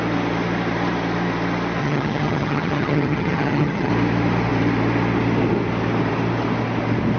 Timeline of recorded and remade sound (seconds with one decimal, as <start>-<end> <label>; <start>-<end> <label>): 0.0-1.8 recorded; 1.8-3.9 remade; 3.9-7.2 recorded